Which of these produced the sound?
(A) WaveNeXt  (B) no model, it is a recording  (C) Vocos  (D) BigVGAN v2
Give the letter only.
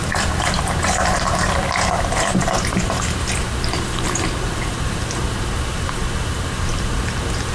D